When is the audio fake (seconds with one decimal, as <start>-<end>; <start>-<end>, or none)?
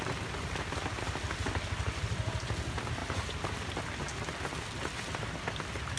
3.0-3.7